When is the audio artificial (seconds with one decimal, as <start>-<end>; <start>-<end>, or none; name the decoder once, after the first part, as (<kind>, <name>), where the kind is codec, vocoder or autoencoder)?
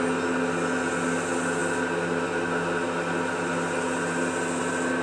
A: none